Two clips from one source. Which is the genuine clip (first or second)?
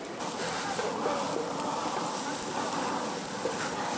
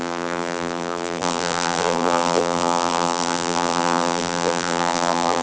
first